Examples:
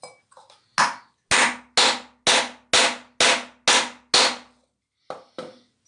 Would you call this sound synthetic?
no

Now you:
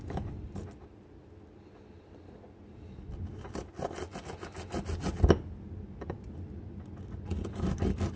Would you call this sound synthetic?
no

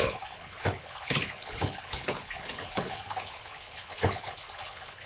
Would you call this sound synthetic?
yes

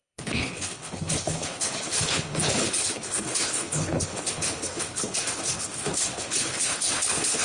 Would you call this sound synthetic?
yes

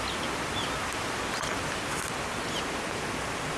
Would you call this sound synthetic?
no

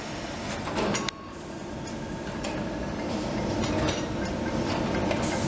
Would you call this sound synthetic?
no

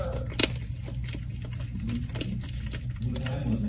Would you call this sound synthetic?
no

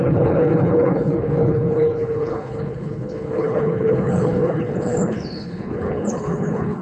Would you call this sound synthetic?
yes